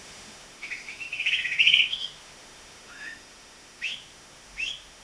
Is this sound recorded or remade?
remade